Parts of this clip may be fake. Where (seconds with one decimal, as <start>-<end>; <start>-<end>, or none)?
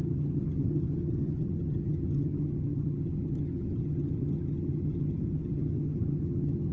0.0-6.7